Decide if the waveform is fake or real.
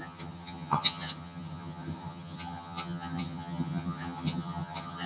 fake